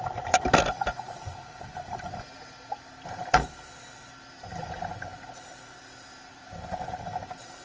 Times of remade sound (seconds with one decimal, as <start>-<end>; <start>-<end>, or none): none